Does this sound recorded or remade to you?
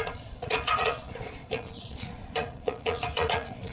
remade